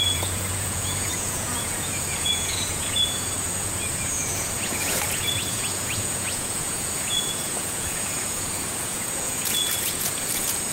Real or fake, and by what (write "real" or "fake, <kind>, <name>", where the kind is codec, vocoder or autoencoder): fake, vocoder, Vocos